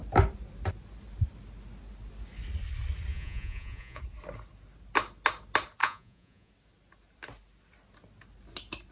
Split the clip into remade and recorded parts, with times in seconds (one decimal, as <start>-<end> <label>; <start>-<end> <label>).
0.0-3.1 recorded; 3.1-4.0 remade; 4.0-5.8 recorded; 5.8-6.5 remade; 6.5-8.9 recorded